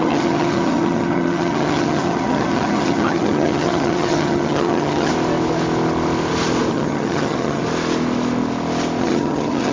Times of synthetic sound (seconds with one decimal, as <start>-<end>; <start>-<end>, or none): 0.0-5.1; 6.7-7.6; 9.0-9.7